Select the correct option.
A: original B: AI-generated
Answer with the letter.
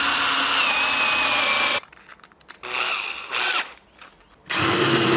A